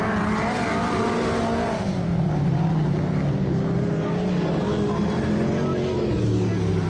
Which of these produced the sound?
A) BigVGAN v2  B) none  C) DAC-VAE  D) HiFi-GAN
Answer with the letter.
B